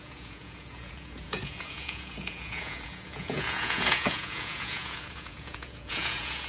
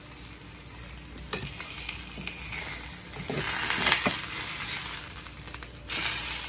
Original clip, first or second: second